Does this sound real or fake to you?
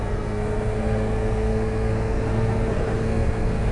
fake